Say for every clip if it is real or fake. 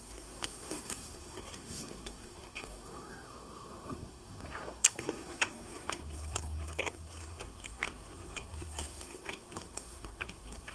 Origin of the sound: fake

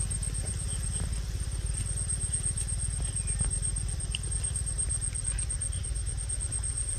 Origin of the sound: real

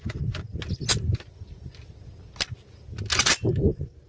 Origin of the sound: real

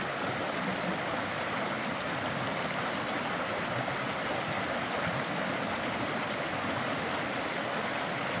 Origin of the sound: real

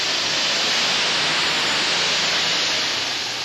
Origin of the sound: real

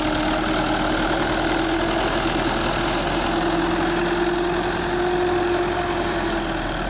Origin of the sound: real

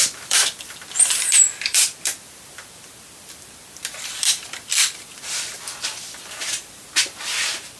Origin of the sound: fake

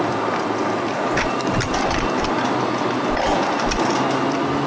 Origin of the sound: real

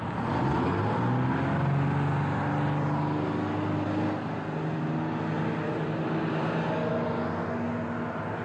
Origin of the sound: real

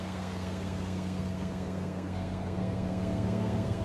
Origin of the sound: fake